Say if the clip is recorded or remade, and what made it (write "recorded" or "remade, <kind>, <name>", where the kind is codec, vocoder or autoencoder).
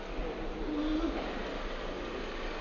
recorded